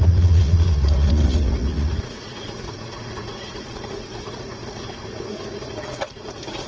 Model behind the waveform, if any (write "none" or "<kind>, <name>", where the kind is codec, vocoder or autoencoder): vocoder, Vocos